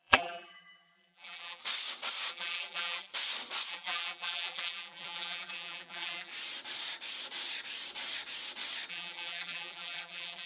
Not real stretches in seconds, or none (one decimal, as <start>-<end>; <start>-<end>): 0.0-1.6; 2.3-3.1; 3.7-6.3; 8.9-10.5